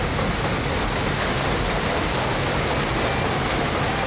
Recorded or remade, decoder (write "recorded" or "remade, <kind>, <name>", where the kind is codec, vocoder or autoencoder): recorded